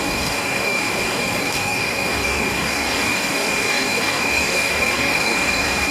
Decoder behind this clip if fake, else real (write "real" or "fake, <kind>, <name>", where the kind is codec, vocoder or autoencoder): fake, codec, DAC